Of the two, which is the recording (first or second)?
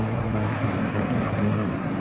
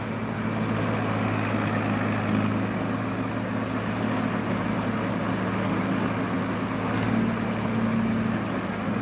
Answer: second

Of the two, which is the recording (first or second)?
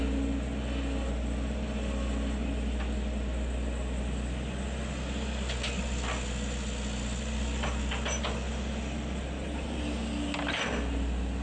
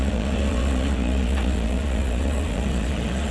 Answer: first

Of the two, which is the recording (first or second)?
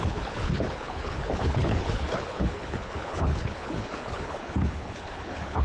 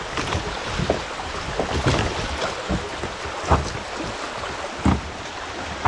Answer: second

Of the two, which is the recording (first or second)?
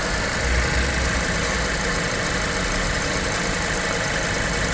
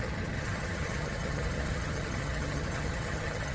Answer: first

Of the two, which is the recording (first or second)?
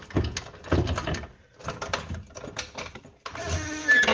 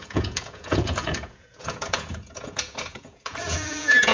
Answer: first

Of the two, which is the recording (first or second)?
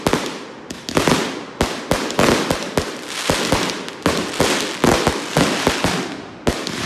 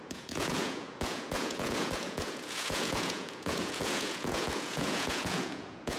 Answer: first